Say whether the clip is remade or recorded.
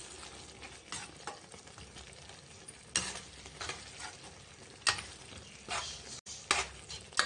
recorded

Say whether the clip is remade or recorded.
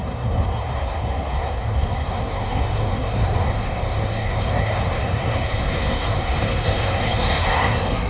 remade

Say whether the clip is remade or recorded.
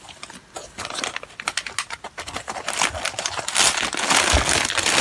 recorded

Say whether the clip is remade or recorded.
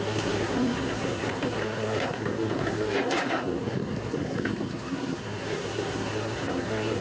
remade